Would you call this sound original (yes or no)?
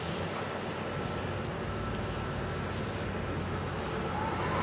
yes